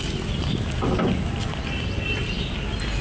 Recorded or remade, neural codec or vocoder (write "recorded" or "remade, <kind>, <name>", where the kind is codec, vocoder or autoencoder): recorded